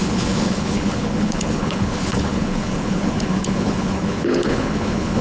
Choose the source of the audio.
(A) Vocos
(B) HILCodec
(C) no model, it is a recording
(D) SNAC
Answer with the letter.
B